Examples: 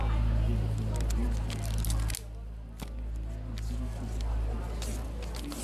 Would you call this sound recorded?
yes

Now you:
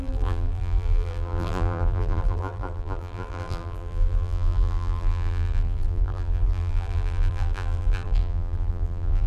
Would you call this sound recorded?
no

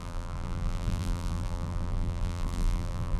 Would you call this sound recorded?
no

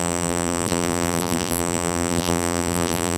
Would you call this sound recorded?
no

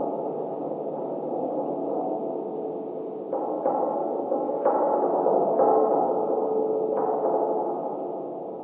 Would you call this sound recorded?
yes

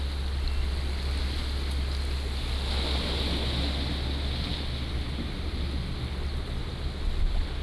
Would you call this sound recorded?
yes